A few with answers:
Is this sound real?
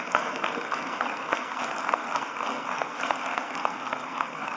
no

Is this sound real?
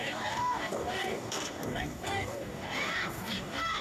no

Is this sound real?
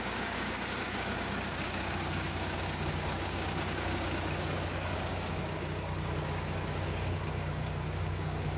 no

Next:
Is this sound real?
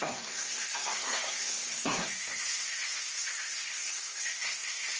no